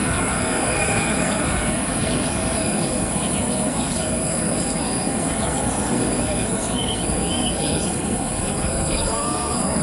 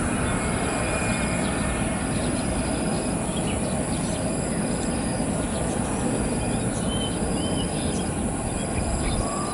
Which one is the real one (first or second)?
second